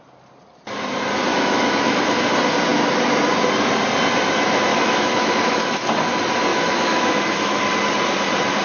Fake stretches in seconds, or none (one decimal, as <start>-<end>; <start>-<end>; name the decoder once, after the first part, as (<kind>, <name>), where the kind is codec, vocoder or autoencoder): 1.3-2.0 (autoencoder, DAC-VAE); 4.7-5.9; 6.5-7.7